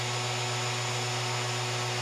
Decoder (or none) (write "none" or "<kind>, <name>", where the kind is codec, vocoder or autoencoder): none